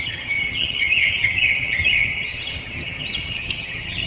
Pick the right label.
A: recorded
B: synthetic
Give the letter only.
B